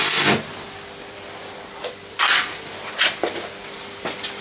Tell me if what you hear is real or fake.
real